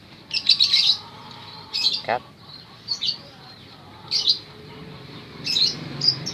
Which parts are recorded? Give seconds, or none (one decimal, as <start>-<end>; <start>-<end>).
none

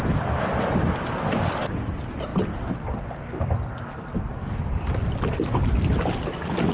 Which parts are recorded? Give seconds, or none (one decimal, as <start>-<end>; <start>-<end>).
0.0-6.7

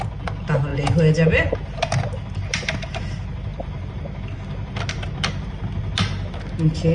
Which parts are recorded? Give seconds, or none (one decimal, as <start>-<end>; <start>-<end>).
0.0-0.7; 1.5-3.5; 4.9-6.9

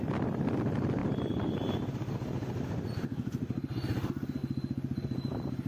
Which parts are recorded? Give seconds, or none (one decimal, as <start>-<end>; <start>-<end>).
0.0-4.4